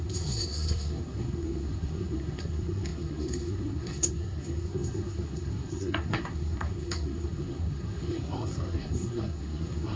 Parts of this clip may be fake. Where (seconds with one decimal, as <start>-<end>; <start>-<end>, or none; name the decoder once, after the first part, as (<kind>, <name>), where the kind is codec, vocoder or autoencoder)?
0.0-10.0 (codec, SNAC)